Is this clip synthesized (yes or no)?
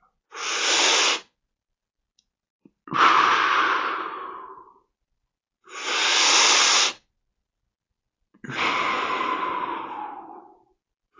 no